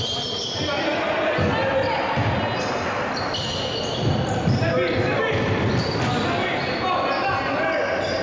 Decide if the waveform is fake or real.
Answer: real